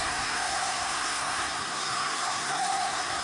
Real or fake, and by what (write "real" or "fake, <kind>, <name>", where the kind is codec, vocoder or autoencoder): fake, codec, SNAC